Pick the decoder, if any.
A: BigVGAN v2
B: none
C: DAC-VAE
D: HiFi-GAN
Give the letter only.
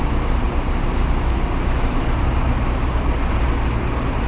B